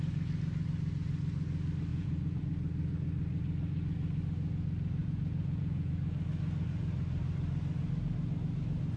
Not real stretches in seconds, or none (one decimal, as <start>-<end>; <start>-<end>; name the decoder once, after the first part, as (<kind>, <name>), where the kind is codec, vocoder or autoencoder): 1.9-2.4 (vocoder, Vocos); 5.0-5.9